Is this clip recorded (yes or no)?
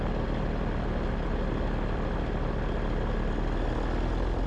yes